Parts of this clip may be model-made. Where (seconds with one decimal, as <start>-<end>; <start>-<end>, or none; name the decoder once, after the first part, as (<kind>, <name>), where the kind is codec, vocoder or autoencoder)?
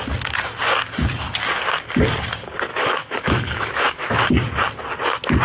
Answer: 2.7-4.3 (autoencoder, DAC-VAE)